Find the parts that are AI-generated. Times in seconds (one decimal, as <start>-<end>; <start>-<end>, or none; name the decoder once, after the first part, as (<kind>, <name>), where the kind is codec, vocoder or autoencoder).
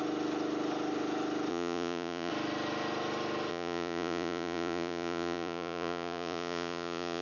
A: 1.5-2.3 (vocoder, Vocos); 3.5-7.2